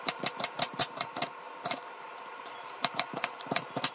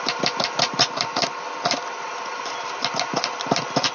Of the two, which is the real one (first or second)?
second